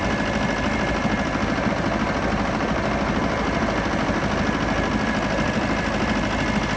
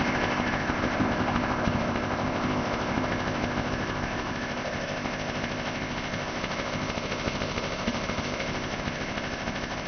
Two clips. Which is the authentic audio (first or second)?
first